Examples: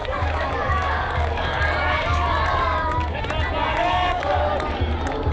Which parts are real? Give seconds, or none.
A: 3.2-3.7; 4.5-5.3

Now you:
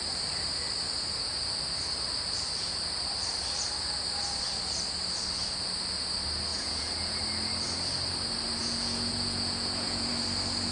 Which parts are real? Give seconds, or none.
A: 0.0-6.5; 7.2-8.6; 10.1-10.7

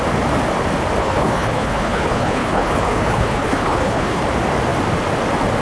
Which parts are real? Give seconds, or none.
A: 0.0-1.0; 4.2-5.6